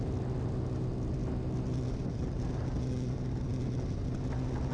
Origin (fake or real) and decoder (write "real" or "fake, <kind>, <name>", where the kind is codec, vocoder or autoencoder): real